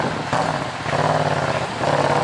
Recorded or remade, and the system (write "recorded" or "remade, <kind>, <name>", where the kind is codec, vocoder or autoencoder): recorded